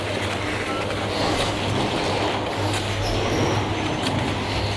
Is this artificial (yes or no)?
no